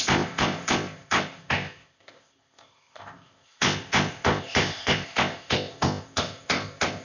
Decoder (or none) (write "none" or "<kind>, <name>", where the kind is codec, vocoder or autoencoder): codec, ZipCodec